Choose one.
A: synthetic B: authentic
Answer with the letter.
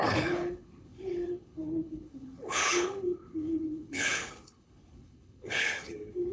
A